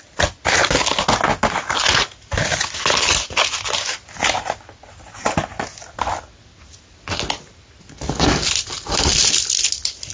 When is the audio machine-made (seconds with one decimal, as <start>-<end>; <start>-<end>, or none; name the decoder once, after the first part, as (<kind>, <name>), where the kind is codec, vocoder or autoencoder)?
none